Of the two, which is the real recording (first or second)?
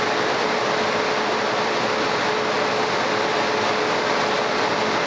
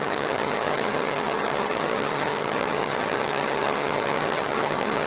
first